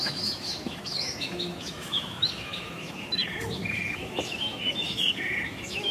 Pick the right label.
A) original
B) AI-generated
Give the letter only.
B